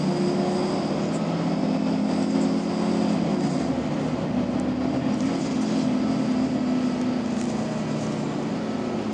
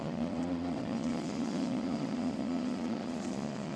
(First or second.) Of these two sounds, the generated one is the second